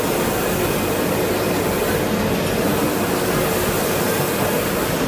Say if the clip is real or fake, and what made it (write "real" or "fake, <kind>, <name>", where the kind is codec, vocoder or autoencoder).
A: real